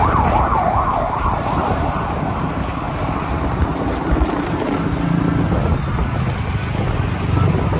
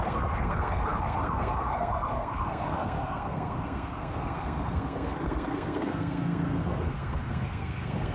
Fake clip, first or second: second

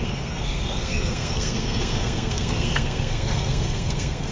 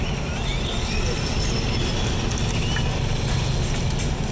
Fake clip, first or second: first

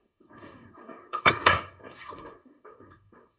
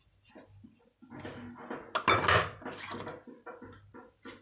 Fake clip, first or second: first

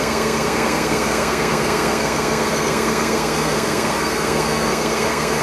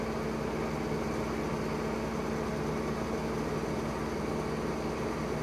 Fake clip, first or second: first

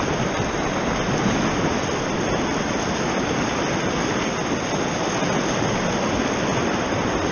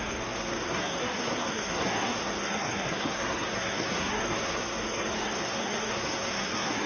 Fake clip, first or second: second